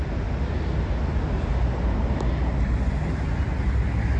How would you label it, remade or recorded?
recorded